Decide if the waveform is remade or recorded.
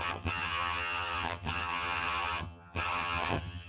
remade